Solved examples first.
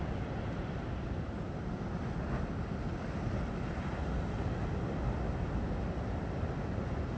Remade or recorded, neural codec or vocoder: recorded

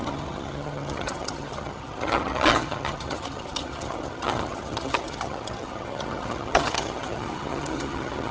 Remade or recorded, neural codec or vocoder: remade, vocoder, HiFi-GAN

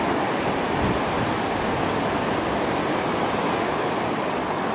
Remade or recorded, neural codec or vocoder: recorded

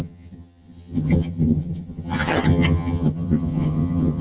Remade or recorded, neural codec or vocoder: remade, vocoder, HiFi-GAN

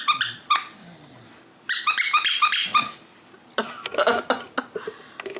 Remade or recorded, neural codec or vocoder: recorded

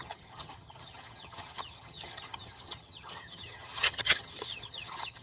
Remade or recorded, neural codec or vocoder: remade, vocoder, HiFi-GAN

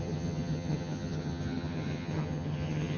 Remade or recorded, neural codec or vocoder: remade, vocoder, HiFi-GAN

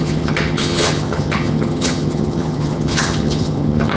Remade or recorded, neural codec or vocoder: remade, vocoder, HiFi-GAN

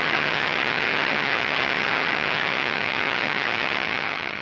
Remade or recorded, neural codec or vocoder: remade, vocoder, HiFi-GAN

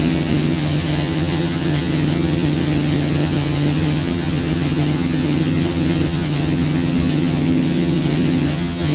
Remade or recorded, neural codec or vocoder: remade, vocoder, HiFi-GAN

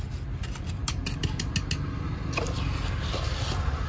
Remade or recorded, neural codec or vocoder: recorded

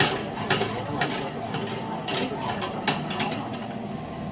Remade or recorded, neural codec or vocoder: recorded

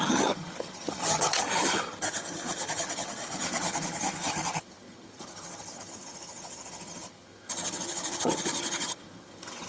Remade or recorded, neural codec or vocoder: remade, vocoder, HiFi-GAN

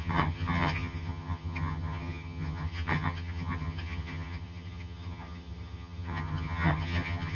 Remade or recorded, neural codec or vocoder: remade, vocoder, HiFi-GAN